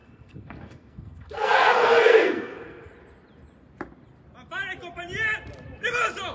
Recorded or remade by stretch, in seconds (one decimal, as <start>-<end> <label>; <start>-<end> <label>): 0.0-2.9 remade; 2.9-6.3 recorded